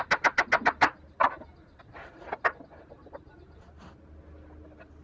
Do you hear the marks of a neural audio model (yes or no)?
no